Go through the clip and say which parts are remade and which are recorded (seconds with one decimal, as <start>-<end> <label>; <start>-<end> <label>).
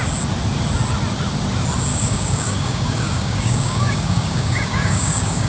0.0-1.9 recorded; 1.9-5.5 remade